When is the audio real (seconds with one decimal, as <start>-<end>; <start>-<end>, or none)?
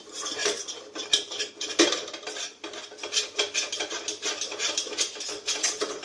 0.0-5.3